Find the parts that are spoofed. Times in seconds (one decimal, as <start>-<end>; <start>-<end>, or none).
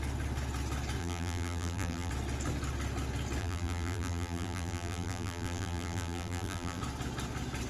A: 1.0-2.1; 3.4-6.8